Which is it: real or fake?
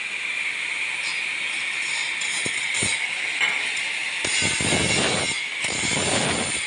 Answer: real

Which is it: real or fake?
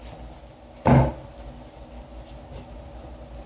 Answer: real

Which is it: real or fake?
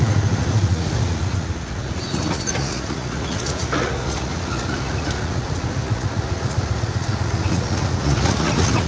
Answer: fake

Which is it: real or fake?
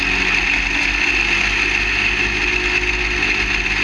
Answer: real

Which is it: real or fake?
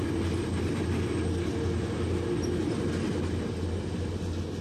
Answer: real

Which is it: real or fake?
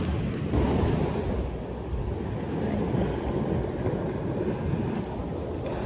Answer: real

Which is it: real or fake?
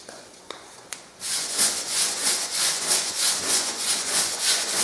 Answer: fake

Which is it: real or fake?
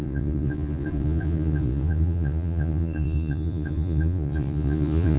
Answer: fake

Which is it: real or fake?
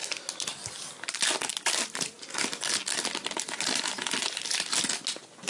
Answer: real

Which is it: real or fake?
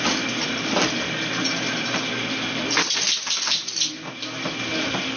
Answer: real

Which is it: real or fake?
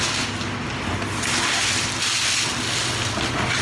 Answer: real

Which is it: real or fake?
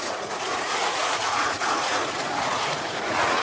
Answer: fake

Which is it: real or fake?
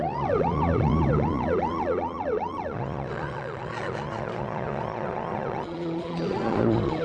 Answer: fake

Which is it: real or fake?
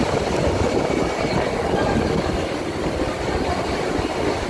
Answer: real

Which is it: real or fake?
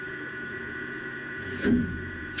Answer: fake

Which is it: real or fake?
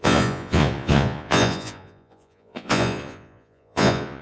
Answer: fake